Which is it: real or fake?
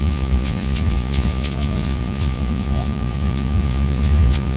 fake